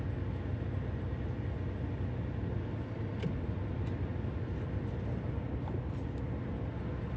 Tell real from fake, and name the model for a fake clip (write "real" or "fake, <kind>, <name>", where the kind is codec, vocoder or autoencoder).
real